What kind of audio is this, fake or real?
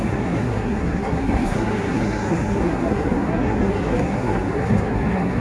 fake